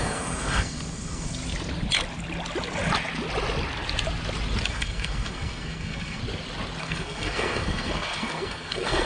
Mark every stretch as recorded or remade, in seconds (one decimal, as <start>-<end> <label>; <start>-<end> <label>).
0.0-1.4 remade; 1.4-4.7 recorded; 4.7-6.2 remade; 6.2-6.8 recorded; 6.8-9.1 remade